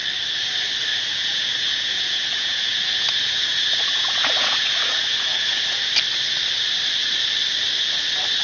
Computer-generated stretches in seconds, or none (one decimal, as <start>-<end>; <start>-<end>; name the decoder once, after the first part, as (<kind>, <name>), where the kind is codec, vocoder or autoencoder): 0.9-5.9 (vocoder, Vocos)